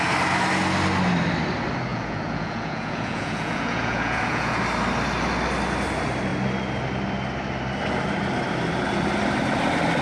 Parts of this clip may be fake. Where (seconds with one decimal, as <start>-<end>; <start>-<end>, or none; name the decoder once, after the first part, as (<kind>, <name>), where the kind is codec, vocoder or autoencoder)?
1.9-4.6 (vocoder, Vocos)